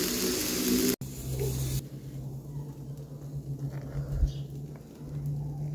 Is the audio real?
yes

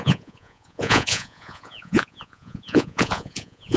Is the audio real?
no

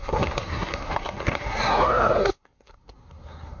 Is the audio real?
no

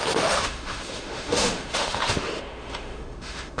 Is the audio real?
no